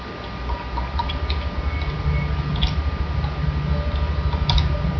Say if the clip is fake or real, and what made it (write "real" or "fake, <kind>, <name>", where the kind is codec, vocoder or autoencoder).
real